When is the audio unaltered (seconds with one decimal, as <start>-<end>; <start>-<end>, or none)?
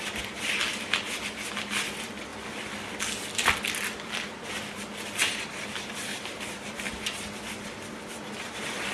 0.0-6.1; 6.9-8.9